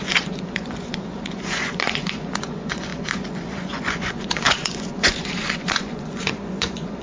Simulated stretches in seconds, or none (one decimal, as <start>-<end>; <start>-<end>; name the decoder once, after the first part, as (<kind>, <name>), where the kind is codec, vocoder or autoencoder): 0.0-7.0 (vocoder, Vocos)